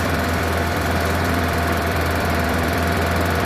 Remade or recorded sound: remade